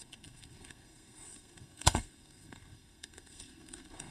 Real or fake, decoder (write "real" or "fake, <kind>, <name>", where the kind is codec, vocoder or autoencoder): fake, codec, SNAC